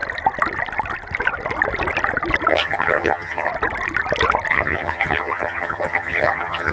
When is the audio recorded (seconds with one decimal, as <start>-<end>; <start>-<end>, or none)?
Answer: 0.0-2.5; 3.5-4.5